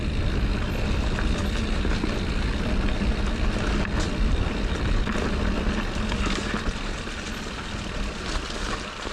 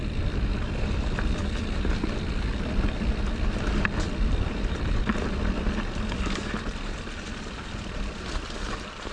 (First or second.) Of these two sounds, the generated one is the second